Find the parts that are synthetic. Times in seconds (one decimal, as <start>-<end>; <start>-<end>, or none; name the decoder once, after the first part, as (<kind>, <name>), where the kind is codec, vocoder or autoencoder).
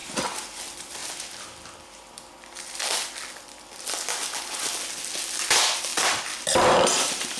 0.0-0.6 (vocoder, BigVGAN v2); 5.9-7.4